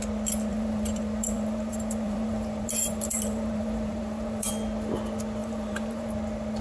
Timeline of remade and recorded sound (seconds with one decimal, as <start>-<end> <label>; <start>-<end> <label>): 0.0-0.5 recorded; 0.5-4.5 remade; 4.5-5.4 recorded; 5.4-6.1 remade; 6.1-6.6 recorded